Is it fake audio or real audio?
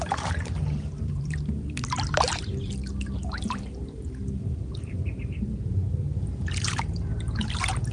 fake